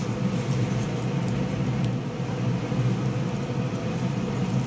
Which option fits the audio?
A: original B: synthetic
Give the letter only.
A